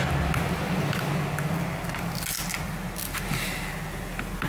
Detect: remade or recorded recorded